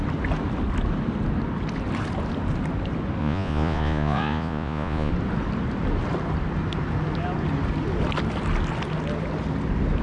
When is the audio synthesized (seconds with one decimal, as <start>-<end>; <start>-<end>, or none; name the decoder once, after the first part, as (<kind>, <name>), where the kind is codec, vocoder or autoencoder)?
3.2-5.1 (vocoder, Vocos)